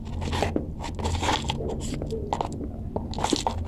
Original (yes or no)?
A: yes